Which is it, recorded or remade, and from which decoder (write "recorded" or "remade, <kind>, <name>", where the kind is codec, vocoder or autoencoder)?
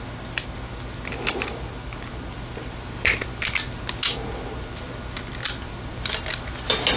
recorded